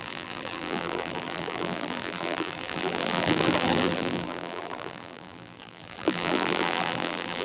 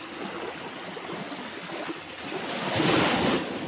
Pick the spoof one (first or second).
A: first